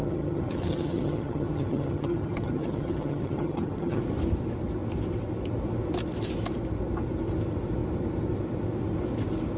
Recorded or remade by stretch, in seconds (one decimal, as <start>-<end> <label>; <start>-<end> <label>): 0.0-4.0 remade; 4.0-9.6 recorded